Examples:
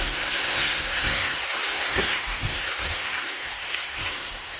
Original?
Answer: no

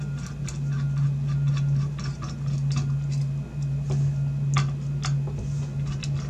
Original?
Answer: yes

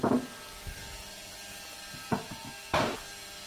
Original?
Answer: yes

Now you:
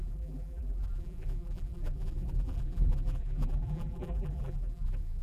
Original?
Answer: no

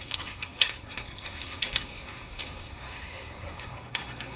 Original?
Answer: no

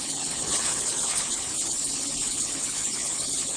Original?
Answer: no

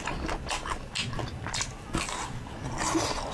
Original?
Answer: yes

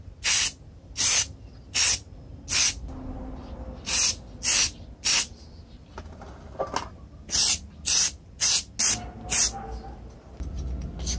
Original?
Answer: yes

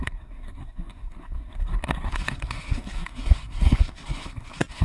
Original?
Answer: no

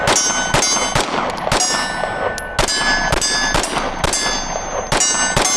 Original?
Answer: yes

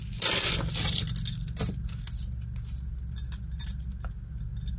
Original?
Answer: yes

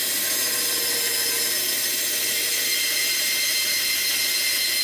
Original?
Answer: yes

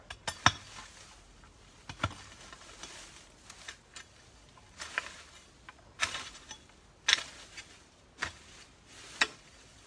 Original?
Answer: yes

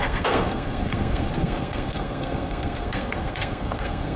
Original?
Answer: no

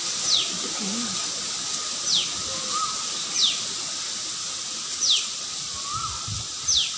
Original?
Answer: yes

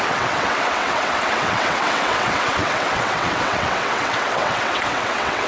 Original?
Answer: no